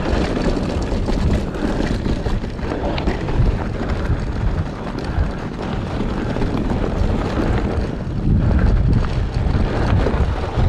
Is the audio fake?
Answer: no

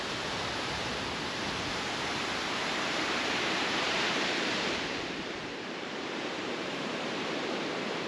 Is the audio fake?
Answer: yes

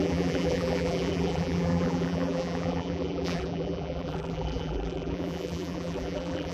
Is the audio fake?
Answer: yes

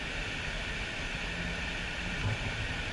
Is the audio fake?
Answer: no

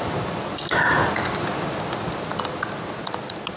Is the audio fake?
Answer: no